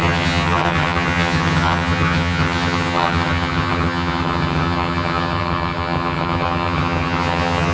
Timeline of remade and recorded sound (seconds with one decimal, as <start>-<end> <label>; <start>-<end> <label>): 0.0-7.7 remade